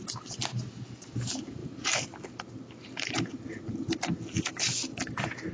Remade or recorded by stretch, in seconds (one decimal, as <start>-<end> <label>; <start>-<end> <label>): 0.0-5.5 recorded